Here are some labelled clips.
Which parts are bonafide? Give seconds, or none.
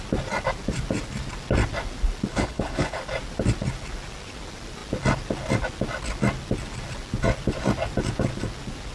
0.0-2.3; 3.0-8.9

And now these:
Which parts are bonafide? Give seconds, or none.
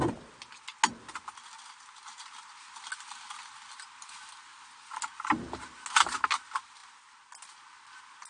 0.0-8.3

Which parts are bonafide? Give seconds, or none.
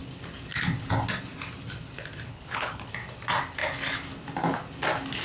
0.0-2.3; 2.9-5.2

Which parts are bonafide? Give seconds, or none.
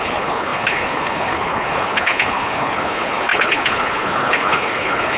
none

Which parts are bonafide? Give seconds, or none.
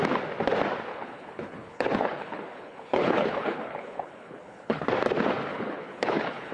0.0-0.9; 4.8-5.5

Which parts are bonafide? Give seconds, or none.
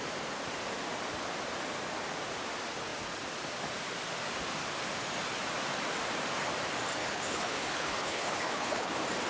0.0-7.0; 8.9-9.3